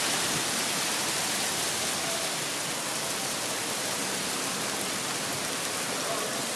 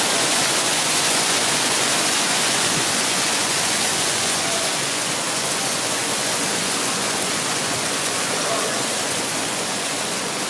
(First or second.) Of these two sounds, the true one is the first